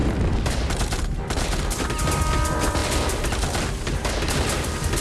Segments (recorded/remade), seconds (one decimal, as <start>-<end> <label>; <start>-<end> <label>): 0.0-5.0 remade